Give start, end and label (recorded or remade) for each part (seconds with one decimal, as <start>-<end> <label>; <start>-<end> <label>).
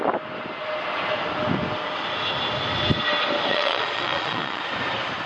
0.0-3.5 recorded; 3.5-4.6 remade; 4.6-5.3 recorded